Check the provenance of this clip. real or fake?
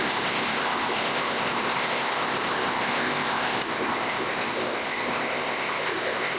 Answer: fake